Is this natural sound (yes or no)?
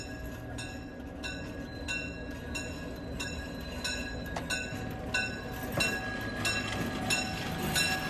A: yes